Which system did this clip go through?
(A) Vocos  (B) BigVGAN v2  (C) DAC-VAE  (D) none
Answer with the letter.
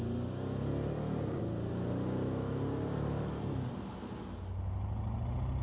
D